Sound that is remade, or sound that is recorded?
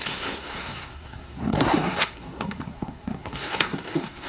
remade